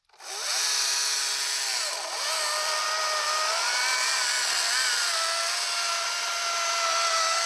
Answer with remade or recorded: recorded